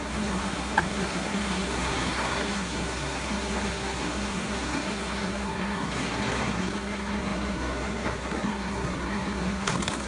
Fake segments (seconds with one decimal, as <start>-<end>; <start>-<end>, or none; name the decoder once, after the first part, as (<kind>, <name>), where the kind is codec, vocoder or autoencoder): 0.0-10.1 (codec, SNAC)